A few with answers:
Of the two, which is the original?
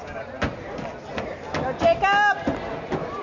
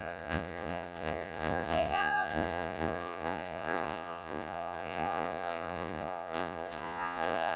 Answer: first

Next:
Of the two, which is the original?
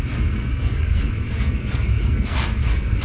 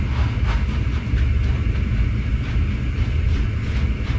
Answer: second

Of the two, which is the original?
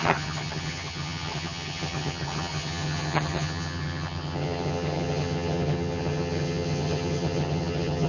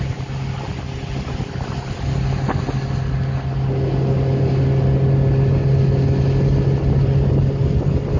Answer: second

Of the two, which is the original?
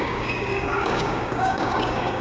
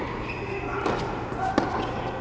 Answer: second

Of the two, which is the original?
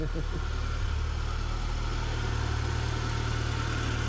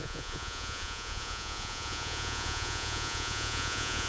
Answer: first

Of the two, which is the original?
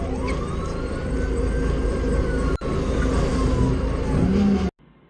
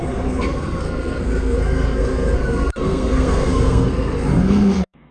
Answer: first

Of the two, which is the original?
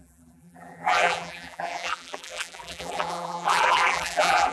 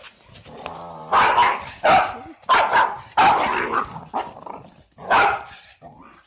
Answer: second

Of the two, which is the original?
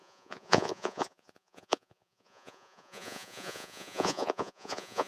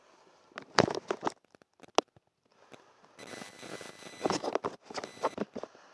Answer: second